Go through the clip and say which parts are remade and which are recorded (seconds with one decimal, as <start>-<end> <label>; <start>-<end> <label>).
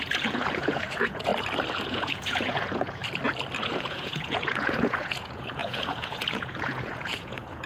0.0-1.3 remade; 1.3-1.9 recorded; 1.9-3.0 remade; 3.0-3.6 recorded; 3.6-7.7 remade